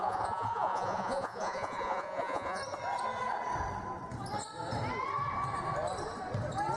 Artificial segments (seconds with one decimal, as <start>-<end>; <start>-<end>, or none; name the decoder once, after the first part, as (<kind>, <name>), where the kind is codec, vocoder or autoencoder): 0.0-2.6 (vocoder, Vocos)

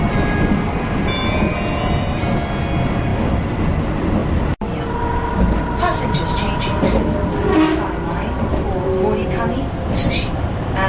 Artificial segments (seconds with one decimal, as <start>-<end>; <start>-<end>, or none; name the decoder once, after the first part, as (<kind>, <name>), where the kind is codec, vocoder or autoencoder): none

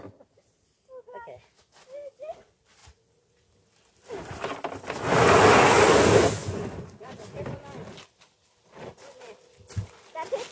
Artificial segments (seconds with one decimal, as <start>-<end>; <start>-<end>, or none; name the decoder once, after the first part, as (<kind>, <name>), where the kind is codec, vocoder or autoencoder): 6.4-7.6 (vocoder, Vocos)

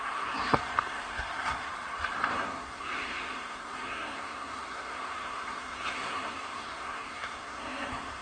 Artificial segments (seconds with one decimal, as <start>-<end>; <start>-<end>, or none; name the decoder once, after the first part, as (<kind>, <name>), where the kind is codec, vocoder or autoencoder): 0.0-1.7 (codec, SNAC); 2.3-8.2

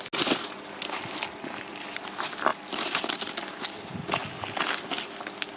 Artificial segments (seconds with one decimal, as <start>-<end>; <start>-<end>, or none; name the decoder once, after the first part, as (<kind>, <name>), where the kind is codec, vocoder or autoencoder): 2.5-3.3 (vocoder, BigVGAN v2)